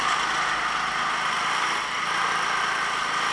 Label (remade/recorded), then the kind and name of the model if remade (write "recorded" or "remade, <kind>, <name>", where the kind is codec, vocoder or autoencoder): recorded